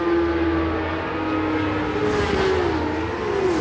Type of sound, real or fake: real